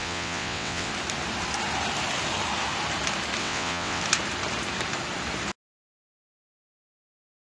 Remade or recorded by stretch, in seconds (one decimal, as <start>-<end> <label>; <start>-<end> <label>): 0.0-0.9 remade; 0.9-3.4 recorded; 3.4-4.0 remade; 4.0-7.4 recorded